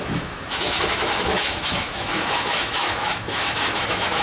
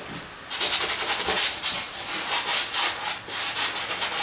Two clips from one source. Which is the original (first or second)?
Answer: second